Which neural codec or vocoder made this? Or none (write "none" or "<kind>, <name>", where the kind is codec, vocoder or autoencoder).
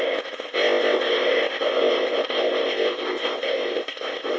codec, ZipCodec